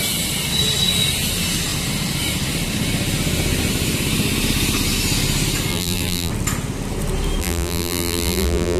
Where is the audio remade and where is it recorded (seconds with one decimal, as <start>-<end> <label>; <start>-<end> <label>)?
0.0-5.7 recorded; 5.7-6.3 remade; 6.3-7.4 recorded; 7.4-8.8 remade